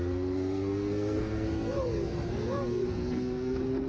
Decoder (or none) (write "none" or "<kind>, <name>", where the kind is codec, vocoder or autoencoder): codec, SNAC